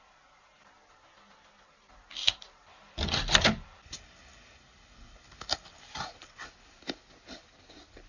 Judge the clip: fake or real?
real